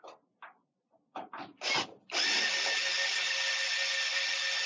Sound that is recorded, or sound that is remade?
recorded